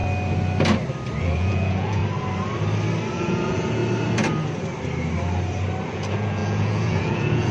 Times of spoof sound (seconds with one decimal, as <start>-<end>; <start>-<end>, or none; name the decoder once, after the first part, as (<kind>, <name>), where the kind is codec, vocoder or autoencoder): 1.2-2.0 (vocoder, Vocos); 3.1-3.8; 5.9-7.5